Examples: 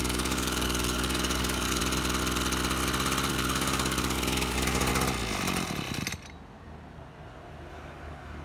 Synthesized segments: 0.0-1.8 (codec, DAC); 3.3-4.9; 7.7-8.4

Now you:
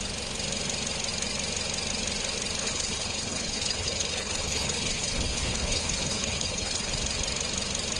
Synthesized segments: 2.6-6.9 (codec, HILCodec)

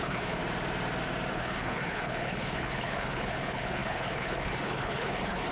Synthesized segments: 0.0-0.4 (codec, HILCodec); 1.3-5.5

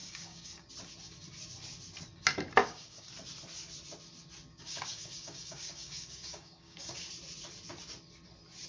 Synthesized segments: 0.0-0.7 (codec, DAC); 2.6-3.1; 4.5-7.1

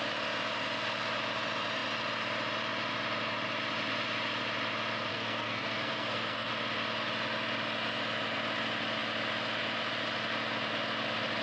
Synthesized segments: 5.1-6.5 (codec, SNAC)

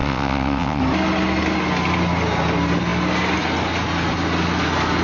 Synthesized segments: 0.0-0.8 (vocoder, WaveNeXt)